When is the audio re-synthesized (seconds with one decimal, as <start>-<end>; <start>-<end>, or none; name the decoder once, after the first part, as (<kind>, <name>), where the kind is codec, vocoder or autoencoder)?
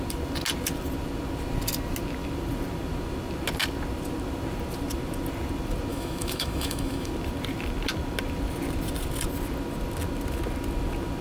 5.9-7.1 (autoencoder, DAC-VAE)